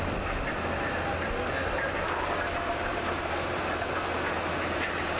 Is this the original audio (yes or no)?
yes